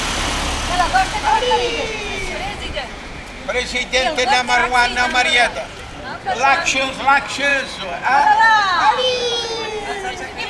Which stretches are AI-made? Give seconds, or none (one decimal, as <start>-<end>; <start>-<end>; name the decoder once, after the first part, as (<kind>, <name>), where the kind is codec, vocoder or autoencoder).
1.0-3.2 (vocoder, Vocos); 4.6-5.9; 7.5-10.0